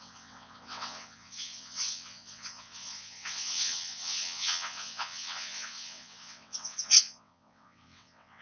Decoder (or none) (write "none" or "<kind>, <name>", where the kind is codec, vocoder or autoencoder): vocoder, WaveNeXt